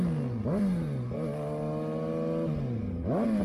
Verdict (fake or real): real